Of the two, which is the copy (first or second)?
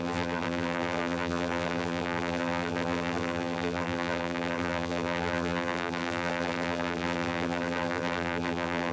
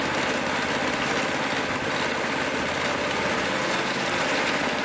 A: first